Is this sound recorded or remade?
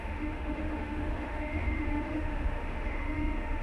remade